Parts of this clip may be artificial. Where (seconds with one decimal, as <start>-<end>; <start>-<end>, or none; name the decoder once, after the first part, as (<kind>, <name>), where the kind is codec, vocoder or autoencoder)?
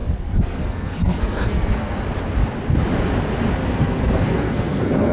0.0-2.0 (codec, SNAC); 3.6-5.1